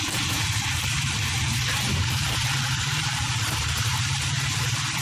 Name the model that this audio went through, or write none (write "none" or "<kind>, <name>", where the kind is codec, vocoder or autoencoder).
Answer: vocoder, BigVGAN v2